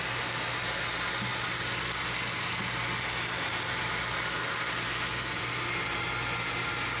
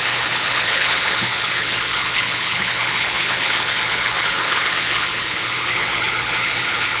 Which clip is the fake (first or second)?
second